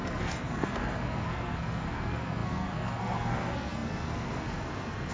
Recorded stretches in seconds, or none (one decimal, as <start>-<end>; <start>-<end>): none